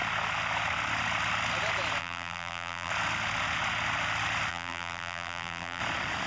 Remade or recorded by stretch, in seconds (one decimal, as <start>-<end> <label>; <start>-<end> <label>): 0.0-2.0 recorded; 2.0-2.9 remade; 2.9-4.5 recorded; 4.5-5.8 remade; 5.8-6.3 recorded